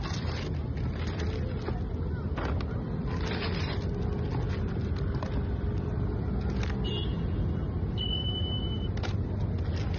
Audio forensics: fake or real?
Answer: real